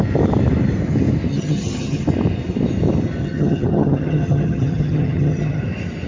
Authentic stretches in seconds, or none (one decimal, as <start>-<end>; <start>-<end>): 0.0-1.3; 2.0-3.2; 5.6-6.1